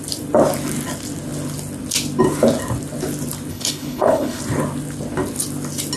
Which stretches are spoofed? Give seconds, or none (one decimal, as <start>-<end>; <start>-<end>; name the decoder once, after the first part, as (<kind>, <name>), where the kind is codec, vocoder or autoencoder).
3.5-4.4 (codec, HILCodec)